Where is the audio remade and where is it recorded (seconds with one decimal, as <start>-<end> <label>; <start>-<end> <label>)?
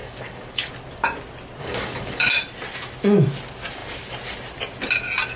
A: 0.0-0.7 remade; 0.7-1.6 recorded; 1.6-2.3 remade; 2.3-5.4 recorded